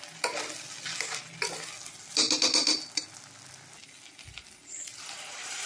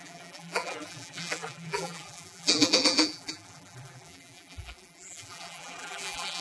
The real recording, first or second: first